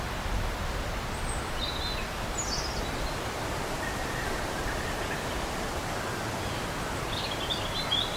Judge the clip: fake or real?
real